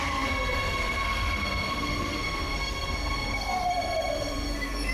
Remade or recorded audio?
remade